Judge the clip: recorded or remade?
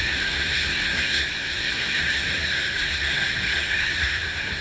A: remade